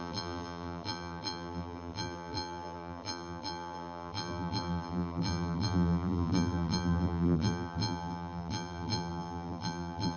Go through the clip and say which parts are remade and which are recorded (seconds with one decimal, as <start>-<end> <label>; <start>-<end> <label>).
0.0-10.2 remade